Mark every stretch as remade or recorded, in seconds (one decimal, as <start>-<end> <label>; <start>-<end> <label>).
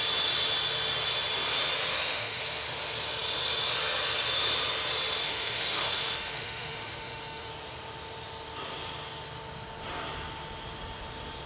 0.0-1.9 recorded; 1.9-2.4 remade; 2.4-5.2 recorded; 5.2-7.5 remade; 7.5-11.5 recorded